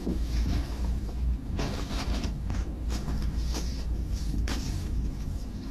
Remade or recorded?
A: remade